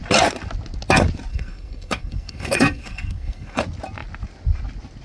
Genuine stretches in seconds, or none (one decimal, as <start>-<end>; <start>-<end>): 0.0-1.3; 3.6-5.0